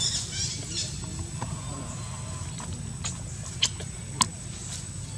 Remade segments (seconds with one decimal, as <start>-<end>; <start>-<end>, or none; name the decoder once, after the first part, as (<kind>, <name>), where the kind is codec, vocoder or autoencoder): none